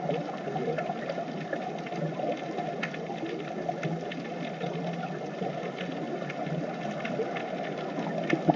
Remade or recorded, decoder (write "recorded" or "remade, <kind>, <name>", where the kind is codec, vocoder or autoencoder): recorded